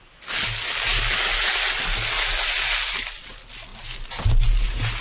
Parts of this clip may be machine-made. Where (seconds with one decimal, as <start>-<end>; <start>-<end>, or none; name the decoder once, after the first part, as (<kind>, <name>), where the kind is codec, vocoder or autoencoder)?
3.7-4.4 (vocoder, BigVGAN v2)